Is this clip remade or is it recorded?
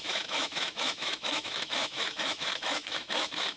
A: remade